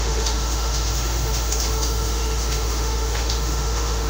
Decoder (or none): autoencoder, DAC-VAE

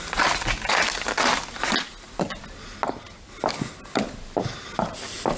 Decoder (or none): none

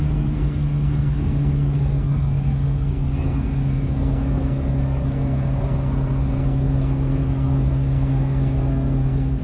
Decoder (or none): codec, SNAC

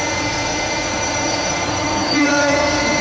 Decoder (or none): vocoder, Vocos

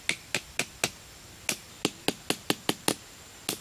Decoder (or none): none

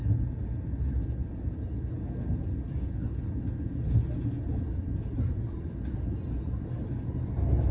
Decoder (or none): none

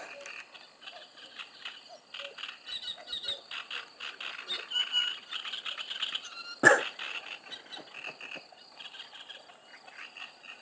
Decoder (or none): none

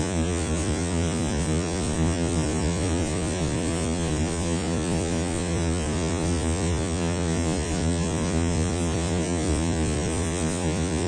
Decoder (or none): vocoder, Vocos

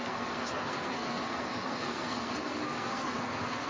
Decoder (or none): codec, SNAC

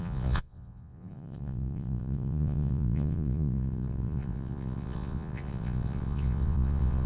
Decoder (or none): vocoder, Vocos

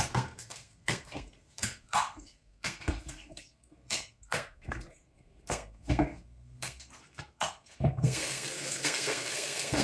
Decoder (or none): codec, SNAC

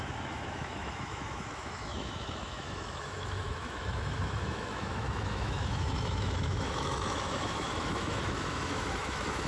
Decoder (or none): autoencoder, DAC-VAE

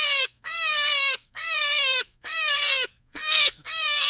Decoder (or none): codec, SNAC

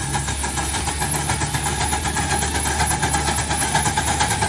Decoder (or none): none